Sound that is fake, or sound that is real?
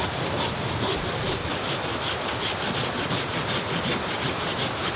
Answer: real